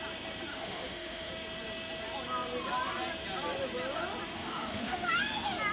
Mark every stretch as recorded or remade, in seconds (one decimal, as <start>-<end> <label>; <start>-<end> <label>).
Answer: 0.0-0.5 recorded; 0.5-1.3 remade; 1.3-4.4 recorded; 4.4-5.2 remade; 5.2-5.7 recorded